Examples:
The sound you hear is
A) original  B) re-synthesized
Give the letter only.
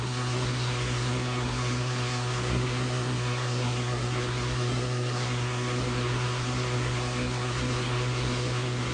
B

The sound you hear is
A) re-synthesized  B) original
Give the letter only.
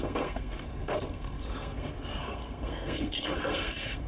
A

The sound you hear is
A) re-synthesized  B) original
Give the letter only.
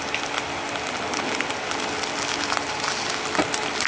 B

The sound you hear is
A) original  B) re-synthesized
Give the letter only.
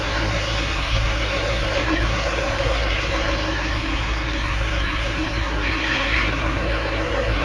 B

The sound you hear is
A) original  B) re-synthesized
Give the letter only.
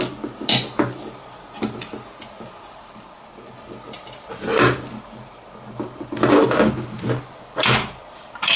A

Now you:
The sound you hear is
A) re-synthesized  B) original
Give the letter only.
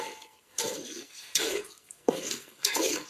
A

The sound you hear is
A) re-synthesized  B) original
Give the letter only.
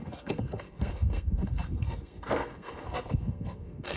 A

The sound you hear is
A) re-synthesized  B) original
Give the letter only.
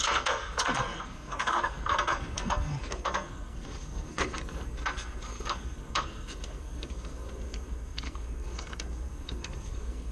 A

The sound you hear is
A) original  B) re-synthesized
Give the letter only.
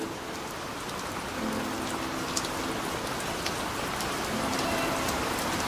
A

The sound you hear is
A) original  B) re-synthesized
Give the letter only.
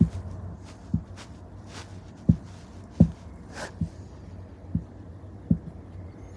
A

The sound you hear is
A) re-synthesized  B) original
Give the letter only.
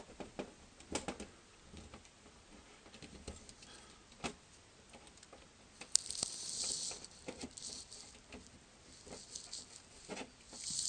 B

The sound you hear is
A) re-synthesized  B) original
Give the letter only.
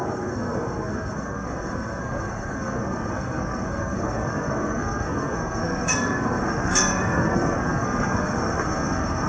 A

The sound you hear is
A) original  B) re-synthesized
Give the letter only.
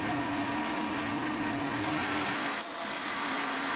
A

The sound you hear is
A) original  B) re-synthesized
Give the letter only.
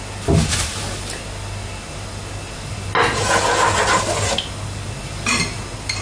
A